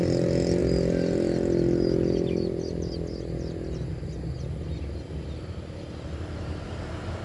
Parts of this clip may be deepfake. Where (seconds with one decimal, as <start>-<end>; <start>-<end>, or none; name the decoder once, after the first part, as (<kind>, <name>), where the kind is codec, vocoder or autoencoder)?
none